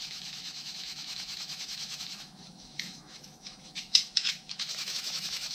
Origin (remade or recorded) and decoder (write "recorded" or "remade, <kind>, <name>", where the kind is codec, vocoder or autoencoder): remade, autoencoder, DAC-VAE